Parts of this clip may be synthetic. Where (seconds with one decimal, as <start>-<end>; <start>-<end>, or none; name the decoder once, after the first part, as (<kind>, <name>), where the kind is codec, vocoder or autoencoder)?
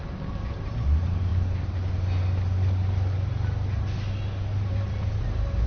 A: none